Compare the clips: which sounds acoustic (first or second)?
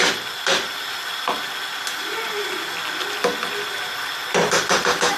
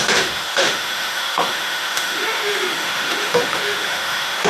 first